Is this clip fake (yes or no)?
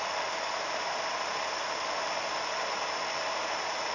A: no